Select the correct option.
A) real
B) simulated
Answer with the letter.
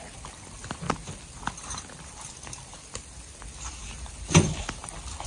A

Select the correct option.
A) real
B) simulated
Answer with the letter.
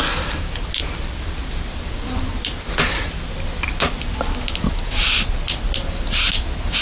A